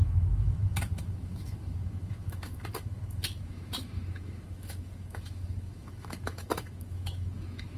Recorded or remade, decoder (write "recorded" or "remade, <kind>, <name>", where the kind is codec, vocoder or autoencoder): remade, autoencoder, DAC-VAE